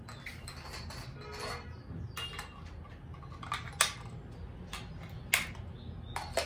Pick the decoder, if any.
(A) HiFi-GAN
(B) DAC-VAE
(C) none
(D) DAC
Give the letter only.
C